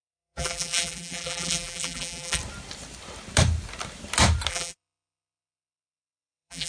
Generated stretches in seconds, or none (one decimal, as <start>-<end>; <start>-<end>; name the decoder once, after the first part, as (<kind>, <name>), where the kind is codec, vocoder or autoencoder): 0.0-2.4 (vocoder, BigVGAN v2); 4.5-6.7